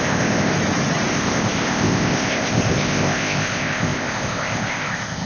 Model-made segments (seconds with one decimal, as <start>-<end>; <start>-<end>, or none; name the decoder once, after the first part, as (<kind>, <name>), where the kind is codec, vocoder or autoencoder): 0.0-0.5 (codec, ZipCodec); 1.1-5.3